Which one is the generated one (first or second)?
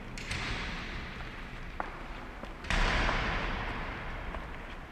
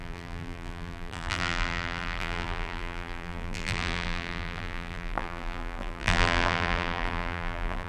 second